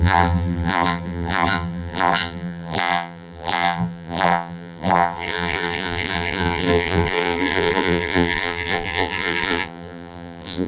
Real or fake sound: fake